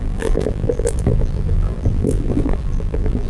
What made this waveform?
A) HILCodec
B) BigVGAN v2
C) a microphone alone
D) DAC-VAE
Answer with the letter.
B